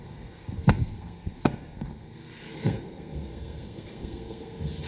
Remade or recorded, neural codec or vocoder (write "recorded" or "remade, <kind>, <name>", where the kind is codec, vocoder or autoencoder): remade, codec, SNAC